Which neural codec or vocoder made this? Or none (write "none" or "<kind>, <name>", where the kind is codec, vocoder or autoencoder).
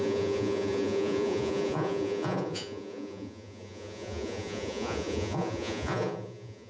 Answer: vocoder, Vocos